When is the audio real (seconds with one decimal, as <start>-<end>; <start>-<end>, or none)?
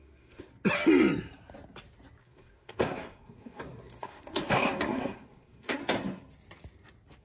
0.5-2.2; 5.8-7.2